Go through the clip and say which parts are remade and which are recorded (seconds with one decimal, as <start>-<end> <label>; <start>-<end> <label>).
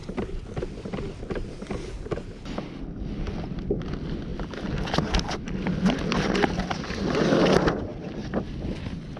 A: 0.0-9.2 recorded